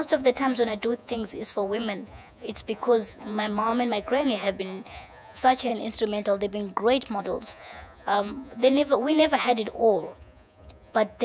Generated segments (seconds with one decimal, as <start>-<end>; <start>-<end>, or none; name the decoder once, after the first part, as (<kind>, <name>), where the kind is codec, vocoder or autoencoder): 0.0-5.7 (vocoder, Vocos); 7.2-11.2